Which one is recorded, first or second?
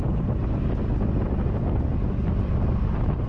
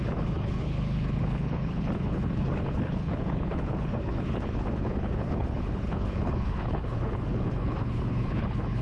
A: first